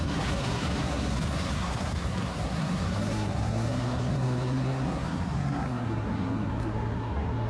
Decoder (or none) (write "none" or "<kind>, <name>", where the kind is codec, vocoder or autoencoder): codec, SNAC